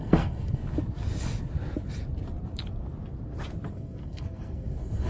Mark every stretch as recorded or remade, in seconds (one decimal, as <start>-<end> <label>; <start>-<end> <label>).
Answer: 0.0-0.6 remade; 0.6-3.7 recorded; 3.7-5.1 remade